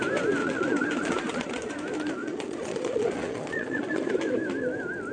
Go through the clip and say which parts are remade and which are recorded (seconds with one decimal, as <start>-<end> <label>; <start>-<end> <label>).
0.0-0.4 recorded; 0.4-1.7 remade; 1.7-2.2 recorded; 2.2-4.1 remade; 4.1-5.1 recorded